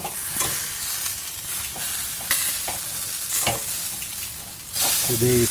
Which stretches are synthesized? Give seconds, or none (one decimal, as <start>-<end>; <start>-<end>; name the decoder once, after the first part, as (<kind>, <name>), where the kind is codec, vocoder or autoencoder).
none